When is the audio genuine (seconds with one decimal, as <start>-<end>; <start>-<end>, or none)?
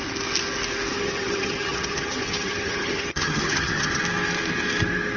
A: 0.0-0.9; 4.0-5.2